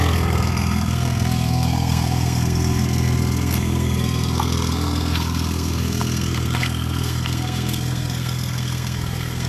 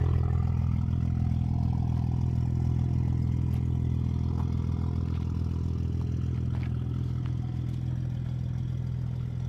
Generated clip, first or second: first